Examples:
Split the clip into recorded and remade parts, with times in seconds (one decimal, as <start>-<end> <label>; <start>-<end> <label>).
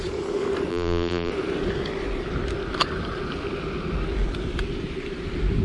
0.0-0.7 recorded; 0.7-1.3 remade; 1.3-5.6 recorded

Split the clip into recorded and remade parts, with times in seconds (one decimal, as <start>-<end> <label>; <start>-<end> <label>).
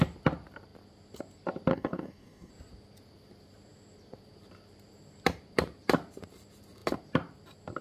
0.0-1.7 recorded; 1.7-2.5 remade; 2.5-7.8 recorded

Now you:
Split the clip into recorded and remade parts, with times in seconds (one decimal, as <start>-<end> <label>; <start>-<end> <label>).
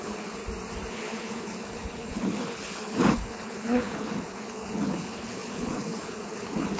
0.0-0.4 remade; 0.4-0.9 recorded; 0.9-6.8 remade